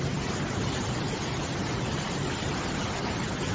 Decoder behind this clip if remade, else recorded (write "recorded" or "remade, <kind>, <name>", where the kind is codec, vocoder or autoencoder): recorded